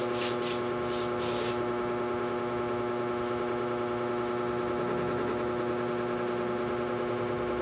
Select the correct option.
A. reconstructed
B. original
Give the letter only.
B